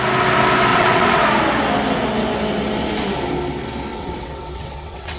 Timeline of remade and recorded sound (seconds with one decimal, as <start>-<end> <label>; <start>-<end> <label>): 0.0-0.7 recorded; 0.7-1.2 remade; 1.2-3.9 recorded; 3.9-5.2 remade